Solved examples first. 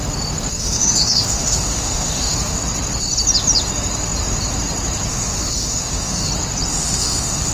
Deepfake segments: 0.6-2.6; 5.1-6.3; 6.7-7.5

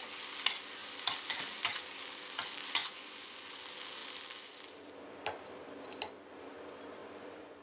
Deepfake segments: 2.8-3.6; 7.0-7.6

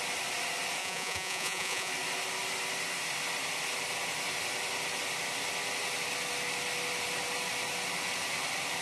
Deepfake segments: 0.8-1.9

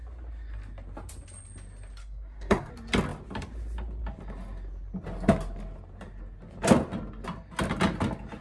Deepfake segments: 2.0-2.7

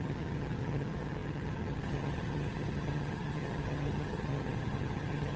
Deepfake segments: 0.0-5.4

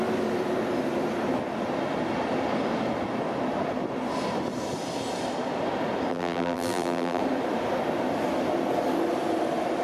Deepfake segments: 6.1-7.2

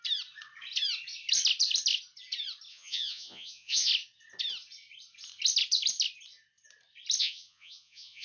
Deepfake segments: 2.7-3.9; 7.2-8.2

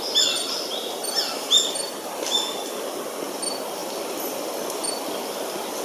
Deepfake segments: none